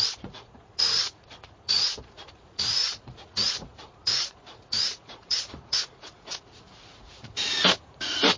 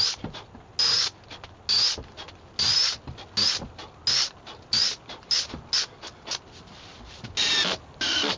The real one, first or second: second